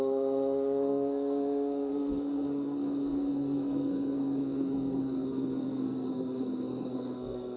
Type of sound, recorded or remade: remade